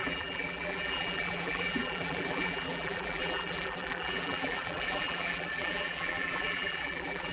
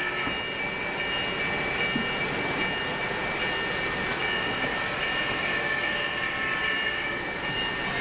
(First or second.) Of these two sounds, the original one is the second